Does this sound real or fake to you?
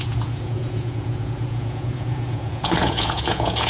fake